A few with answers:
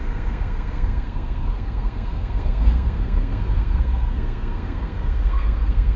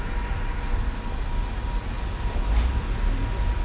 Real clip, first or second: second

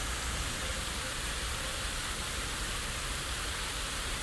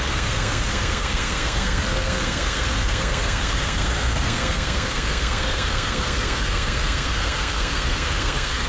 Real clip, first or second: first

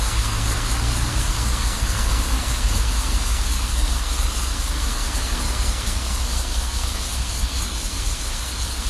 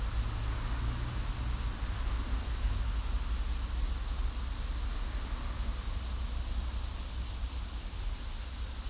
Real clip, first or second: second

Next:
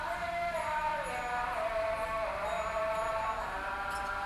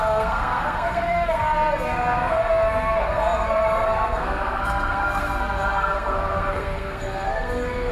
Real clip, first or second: first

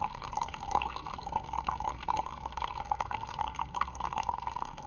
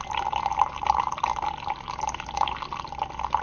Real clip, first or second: second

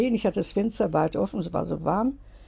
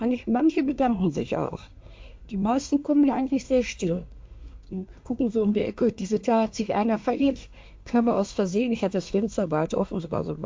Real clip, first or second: first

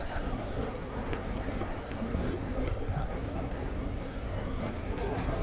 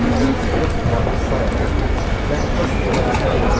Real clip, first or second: second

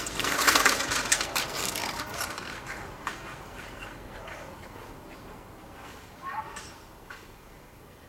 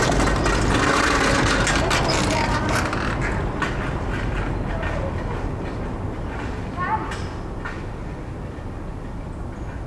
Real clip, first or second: second